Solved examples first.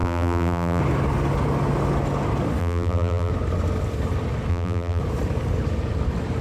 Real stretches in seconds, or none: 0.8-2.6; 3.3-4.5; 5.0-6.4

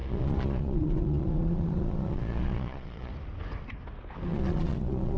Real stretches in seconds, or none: 3.1-4.3

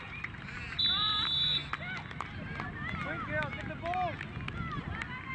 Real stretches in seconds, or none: 1.6-4.8

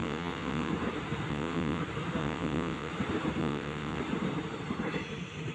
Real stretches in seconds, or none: 0.7-1.3; 1.8-2.2; 2.9-3.4; 4.0-5.5

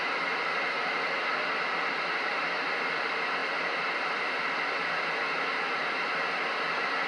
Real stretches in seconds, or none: 0.0-1.3; 2.3-3.4; 4.7-7.1